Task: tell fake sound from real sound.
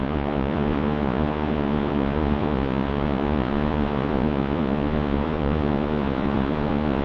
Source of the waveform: fake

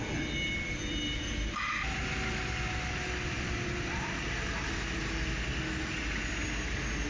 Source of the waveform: real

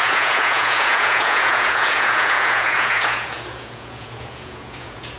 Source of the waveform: fake